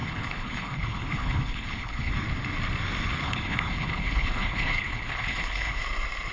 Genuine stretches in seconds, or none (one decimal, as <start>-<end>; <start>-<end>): 2.1-3.2; 5.8-6.3

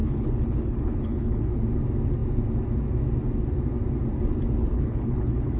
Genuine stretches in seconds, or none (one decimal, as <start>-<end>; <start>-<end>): 1.5-4.7

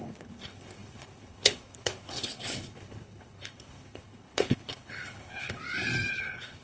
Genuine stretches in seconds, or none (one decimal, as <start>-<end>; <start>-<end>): 5.6-6.1

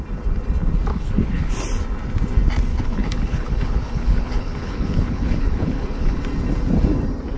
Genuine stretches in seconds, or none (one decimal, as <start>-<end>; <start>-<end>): 0.0-0.9; 1.5-2.7; 6.2-7.4

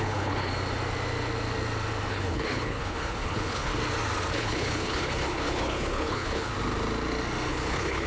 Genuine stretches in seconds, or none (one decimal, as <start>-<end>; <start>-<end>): 0.5-2.1; 3.7-4.3; 6.5-7.5

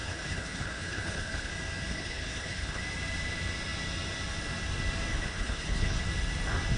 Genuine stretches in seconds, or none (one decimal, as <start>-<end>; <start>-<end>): 1.5-1.9; 2.8-5.1; 6.0-6.8

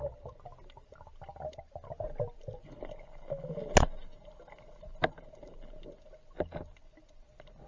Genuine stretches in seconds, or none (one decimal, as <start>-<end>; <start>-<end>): 0.0-7.7

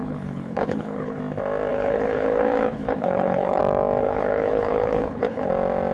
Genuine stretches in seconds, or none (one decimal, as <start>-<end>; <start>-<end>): 1.2-1.7; 3.6-4.0; 5.5-5.9